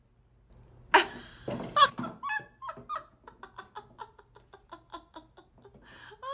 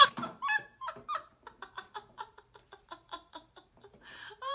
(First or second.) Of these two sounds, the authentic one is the first